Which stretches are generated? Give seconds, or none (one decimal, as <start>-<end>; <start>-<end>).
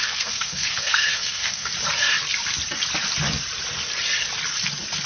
0.0-1.7